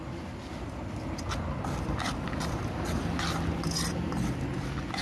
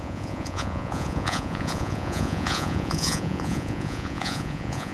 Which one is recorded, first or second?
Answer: first